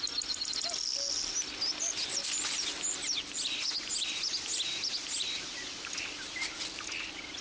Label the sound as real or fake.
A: real